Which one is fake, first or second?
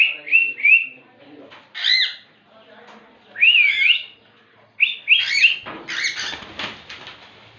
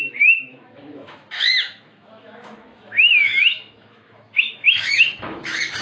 second